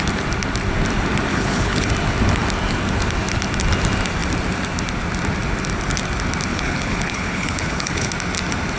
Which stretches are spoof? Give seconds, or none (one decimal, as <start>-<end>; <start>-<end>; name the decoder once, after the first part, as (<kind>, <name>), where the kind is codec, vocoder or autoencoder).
1.3-1.9 (codec, HILCodec); 6.5-8.1